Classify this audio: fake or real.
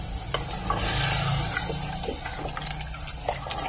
real